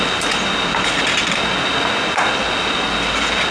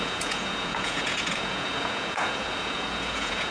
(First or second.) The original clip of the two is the first